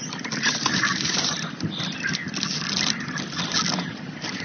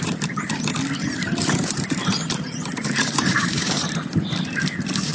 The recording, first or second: first